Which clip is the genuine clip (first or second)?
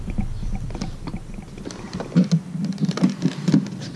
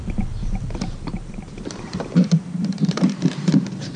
first